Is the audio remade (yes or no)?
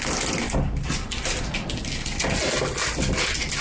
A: no